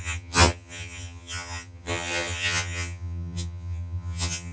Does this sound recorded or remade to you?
remade